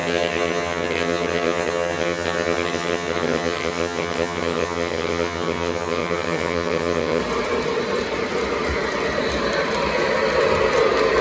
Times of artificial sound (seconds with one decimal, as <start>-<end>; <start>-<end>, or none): 0.0-7.2